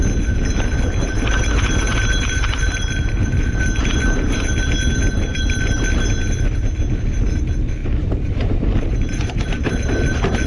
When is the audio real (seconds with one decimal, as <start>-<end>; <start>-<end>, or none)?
0.0-1.0; 4.5-7.8; 9.9-10.5

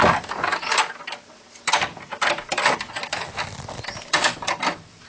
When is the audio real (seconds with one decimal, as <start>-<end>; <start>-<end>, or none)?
0.8-1.9